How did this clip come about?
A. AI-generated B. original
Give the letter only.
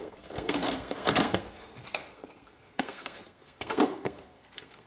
A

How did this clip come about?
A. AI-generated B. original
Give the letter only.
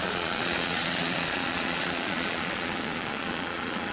A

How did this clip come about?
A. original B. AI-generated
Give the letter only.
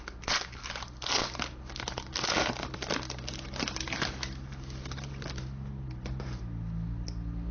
A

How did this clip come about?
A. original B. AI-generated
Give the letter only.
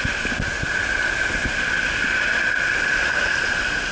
A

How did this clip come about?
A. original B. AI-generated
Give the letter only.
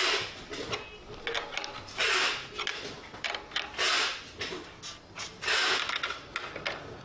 A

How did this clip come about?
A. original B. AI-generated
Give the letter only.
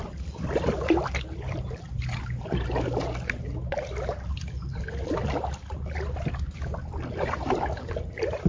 A